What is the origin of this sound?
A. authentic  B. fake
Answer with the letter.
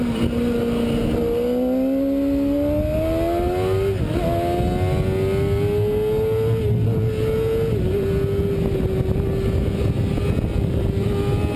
A